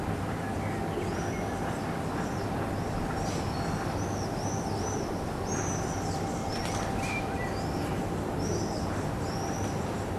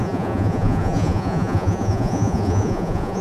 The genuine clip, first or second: first